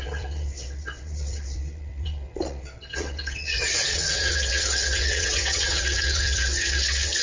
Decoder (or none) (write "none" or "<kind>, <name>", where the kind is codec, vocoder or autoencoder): vocoder, WaveNeXt